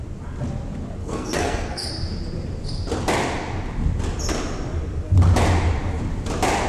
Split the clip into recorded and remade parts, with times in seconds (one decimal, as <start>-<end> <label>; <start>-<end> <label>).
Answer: 0.0-1.0 recorded; 1.0-1.9 remade; 1.9-6.7 recorded